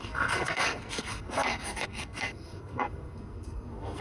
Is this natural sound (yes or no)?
no